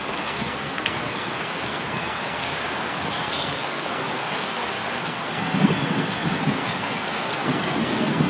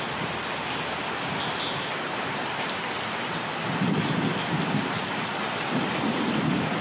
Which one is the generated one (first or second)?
first